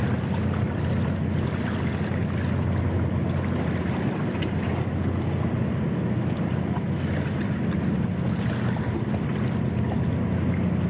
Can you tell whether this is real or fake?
real